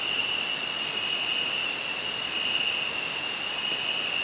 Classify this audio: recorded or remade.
recorded